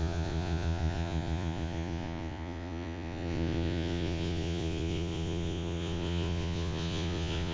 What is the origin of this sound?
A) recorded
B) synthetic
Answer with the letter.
B